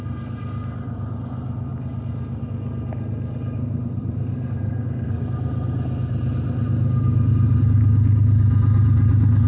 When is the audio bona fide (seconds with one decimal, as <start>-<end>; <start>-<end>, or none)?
0.0-3.6; 5.2-9.5